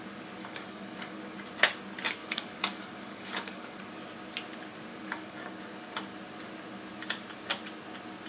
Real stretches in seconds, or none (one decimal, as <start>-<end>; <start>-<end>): 0.0-0.4; 1.2-2.2; 3.8-4.9; 5.6-8.3